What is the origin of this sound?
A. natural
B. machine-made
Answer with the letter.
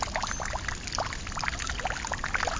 A